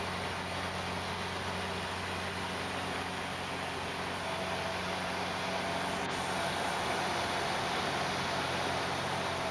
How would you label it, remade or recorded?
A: recorded